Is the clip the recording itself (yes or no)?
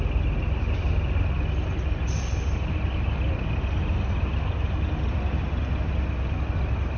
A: yes